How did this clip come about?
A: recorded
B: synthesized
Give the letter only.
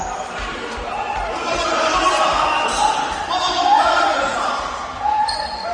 B